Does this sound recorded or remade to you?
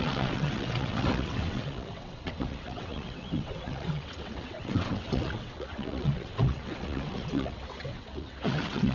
remade